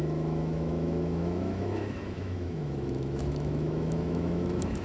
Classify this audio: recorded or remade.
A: remade